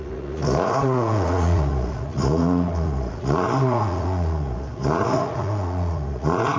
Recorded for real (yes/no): no